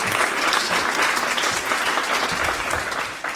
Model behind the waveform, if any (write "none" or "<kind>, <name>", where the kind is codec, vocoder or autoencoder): none